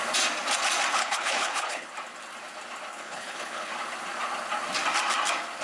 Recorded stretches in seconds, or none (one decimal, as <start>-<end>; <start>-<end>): 0.0-1.0; 1.9-2.9; 3.7-5.6